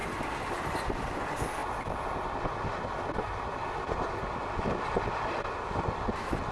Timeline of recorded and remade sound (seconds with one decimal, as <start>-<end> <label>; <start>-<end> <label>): 0.0-6.5 recorded